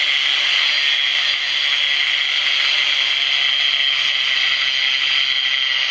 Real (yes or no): yes